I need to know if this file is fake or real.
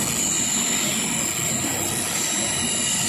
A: real